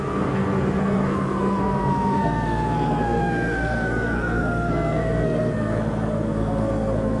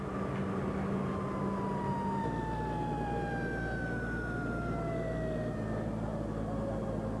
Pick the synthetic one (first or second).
first